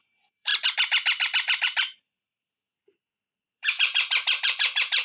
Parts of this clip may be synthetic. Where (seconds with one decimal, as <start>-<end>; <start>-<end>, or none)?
0.0-5.0